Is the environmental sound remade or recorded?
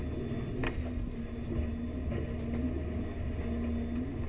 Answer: recorded